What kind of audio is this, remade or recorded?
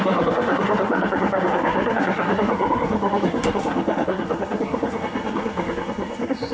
remade